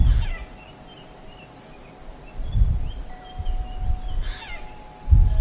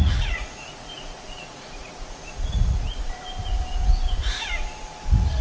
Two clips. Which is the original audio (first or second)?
first